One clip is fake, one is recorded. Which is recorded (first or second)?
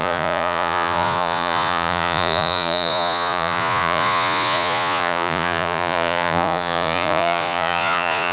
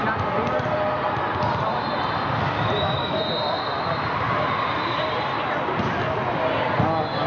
second